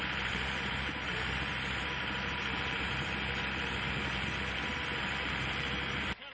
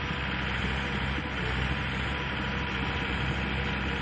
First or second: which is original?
second